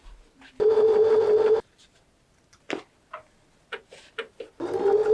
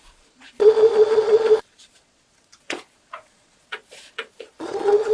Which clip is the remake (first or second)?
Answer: second